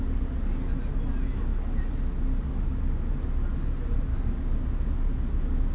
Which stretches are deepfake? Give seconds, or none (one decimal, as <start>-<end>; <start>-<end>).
4.1-4.9